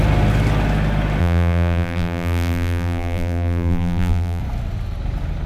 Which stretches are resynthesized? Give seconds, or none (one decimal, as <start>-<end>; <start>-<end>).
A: 1.2-4.4